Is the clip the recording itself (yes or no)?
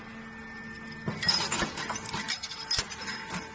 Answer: yes